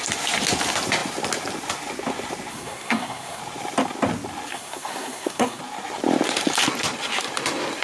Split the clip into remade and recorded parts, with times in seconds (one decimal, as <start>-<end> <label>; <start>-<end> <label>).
0.0-2.5 recorded; 2.5-3.4 remade; 3.4-4.5 recorded; 4.5-5.6 remade; 5.6-7.8 recorded